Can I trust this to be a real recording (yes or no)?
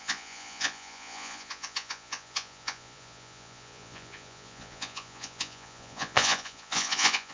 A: no